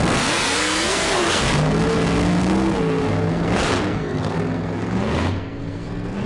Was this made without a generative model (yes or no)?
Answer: no